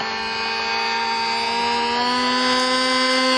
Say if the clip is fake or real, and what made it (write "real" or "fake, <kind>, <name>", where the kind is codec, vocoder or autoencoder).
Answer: real